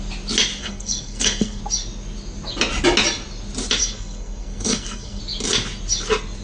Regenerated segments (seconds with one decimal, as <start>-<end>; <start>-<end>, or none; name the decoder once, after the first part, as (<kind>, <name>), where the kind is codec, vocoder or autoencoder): 0.6-1.6 (codec, SNAC); 3.8-5.2